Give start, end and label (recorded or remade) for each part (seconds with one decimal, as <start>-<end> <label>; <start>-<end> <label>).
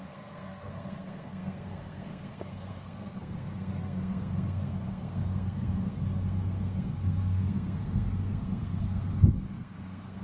0.0-10.2 remade